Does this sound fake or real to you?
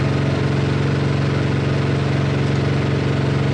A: real